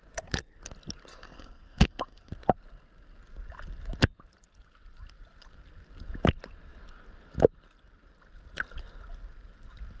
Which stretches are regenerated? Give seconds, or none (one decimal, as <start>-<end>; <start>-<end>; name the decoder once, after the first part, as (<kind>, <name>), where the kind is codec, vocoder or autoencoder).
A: 1.1-2.3 (codec, SNAC)